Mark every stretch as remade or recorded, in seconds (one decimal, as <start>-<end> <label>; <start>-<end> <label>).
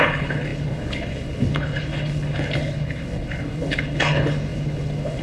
0.0-5.2 remade